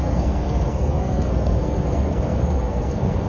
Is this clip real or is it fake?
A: fake